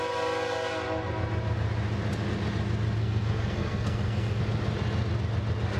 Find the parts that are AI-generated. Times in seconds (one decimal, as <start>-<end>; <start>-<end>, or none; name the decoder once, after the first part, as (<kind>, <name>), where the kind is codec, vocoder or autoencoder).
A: 3.0-4.4 (codec, SNAC)